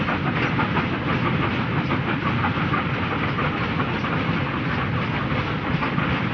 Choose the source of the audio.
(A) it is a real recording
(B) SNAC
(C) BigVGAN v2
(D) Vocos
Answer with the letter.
A